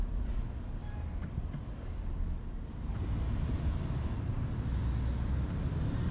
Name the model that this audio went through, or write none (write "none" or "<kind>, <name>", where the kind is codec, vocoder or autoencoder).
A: none